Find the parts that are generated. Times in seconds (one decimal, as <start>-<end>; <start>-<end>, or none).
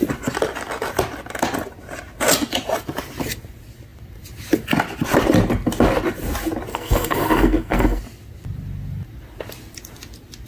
6.7-8.0